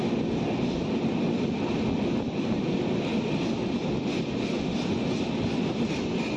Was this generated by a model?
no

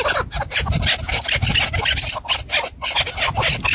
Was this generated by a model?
no